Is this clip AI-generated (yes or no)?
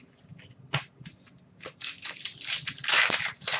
no